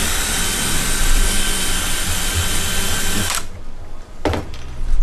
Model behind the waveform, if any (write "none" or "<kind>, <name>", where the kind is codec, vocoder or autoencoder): none